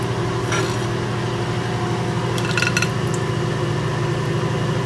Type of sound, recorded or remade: recorded